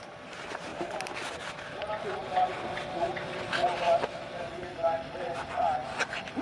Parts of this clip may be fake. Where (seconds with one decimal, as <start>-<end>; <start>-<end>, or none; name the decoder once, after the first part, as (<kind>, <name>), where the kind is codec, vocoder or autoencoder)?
none

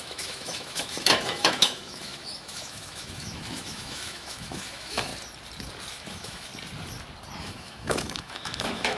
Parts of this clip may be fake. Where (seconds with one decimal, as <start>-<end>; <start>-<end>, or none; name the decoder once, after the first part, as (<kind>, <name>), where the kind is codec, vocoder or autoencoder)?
0.0-5.1 (autoencoder, DAC-VAE); 5.9-6.5; 7.4-9.0

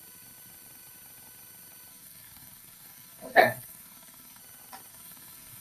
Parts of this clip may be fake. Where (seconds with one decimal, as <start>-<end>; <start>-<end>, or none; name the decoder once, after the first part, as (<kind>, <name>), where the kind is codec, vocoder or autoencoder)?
1.9-4.4 (codec, SNAC); 4.9-5.6

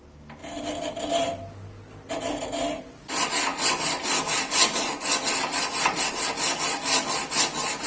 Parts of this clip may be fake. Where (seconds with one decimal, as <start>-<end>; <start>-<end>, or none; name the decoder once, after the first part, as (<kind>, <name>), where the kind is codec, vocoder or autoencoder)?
none

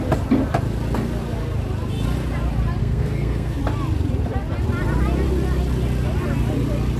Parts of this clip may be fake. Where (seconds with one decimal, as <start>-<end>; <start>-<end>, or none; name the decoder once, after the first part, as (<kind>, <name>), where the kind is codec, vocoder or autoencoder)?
2.8-3.6 (codec, SNAC)